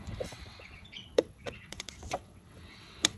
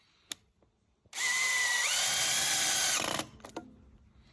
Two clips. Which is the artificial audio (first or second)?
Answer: first